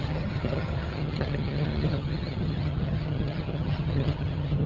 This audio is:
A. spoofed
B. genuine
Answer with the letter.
A